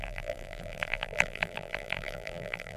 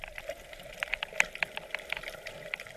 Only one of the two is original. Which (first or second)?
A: second